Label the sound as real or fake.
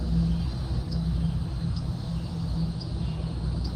fake